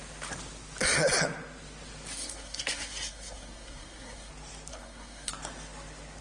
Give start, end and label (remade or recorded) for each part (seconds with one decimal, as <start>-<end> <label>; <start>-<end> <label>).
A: 0.0-2.1 recorded; 2.1-4.3 remade; 4.3-4.7 recorded; 4.7-5.3 remade; 5.3-6.2 recorded